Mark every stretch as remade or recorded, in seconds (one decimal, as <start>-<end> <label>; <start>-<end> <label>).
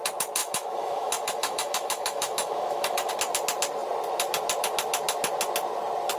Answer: 0.0-0.4 recorded; 0.4-3.1 remade; 3.1-6.2 recorded